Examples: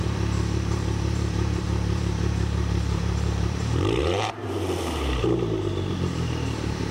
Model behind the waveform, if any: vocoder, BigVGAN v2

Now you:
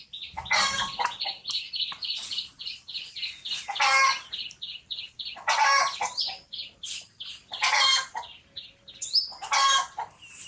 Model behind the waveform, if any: none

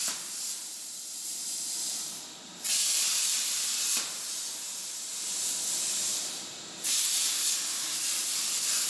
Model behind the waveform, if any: vocoder, BigVGAN v2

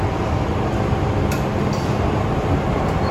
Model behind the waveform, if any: none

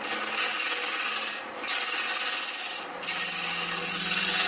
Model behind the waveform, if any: none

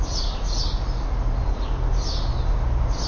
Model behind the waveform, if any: none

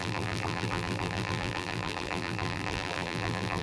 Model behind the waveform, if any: vocoder, BigVGAN v2